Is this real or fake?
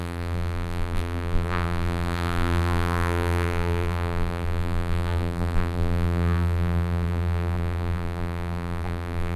fake